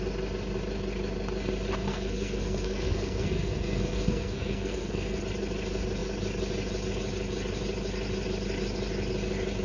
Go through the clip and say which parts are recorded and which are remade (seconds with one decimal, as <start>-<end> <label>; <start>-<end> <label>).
0.0-1.8 recorded; 1.8-5.2 remade; 5.2-9.6 recorded